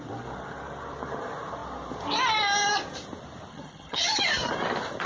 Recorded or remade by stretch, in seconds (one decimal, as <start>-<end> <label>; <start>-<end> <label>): 0.0-3.5 recorded; 3.5-4.2 remade; 4.2-5.1 recorded